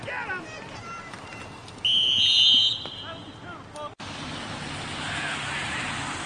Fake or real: real